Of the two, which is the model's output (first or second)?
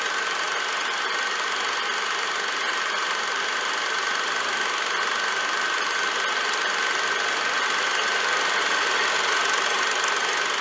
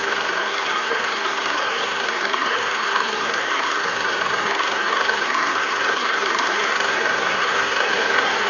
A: second